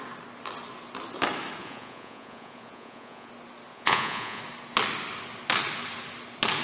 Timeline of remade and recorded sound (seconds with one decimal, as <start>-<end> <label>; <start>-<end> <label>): 0.0-1.6 recorded; 1.6-3.3 remade; 3.3-3.7 recorded; 3.7-4.4 remade; 4.4-6.6 recorded